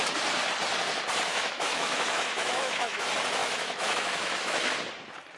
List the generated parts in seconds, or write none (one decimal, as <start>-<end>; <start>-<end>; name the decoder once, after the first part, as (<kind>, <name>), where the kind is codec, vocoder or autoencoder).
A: 1.3-3.0 (autoencoder, DAC-VAE); 3.4-4.7

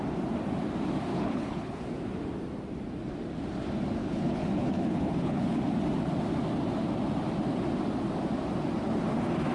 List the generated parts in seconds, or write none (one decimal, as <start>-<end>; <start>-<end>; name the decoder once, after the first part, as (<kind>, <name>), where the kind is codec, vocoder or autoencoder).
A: 1.1-1.8 (codec, HILCodec); 4.0-5.6

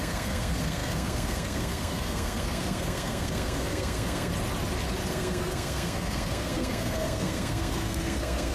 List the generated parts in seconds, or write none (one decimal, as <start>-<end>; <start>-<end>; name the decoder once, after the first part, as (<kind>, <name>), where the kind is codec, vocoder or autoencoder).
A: 0.0-4.3 (codec, SNAC); 5.1-8.5

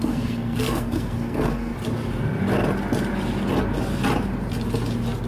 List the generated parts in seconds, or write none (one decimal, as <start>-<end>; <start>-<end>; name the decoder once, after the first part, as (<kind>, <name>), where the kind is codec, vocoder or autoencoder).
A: 0.0-1.7 (codec, SNAC)

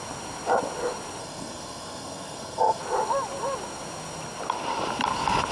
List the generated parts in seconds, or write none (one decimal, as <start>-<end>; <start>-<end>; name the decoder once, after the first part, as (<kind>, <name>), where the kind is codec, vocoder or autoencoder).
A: 1.2-2.8 (codec, SNAC)